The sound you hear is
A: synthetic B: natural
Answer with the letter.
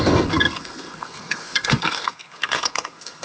A